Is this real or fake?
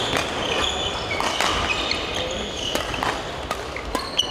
real